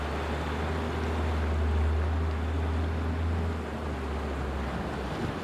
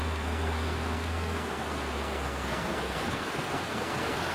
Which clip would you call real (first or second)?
first